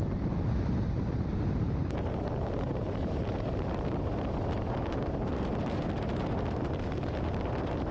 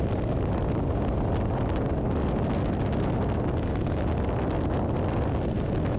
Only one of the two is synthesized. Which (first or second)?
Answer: first